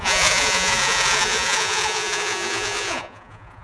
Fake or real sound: fake